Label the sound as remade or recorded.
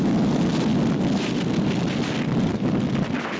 recorded